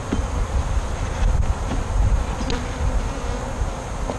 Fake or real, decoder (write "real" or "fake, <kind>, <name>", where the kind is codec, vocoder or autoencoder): real